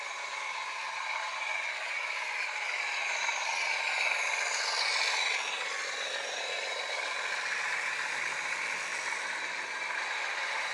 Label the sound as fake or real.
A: real